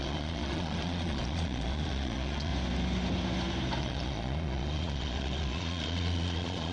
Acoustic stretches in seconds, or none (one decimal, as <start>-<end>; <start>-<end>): 2.5-3.8